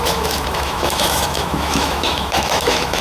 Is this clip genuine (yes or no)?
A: no